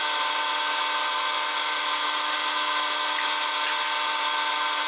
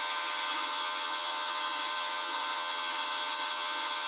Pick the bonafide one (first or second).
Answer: first